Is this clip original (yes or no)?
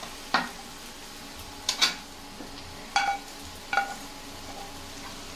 yes